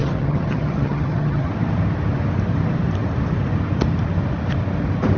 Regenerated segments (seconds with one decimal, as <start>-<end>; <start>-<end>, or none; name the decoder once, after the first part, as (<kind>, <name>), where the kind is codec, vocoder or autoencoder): 0.0-1.5 (vocoder, HiFi-GAN)